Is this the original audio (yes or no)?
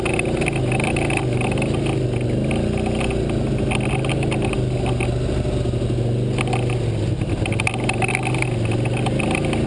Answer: yes